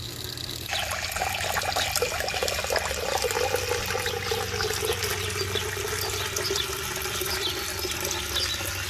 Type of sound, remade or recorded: recorded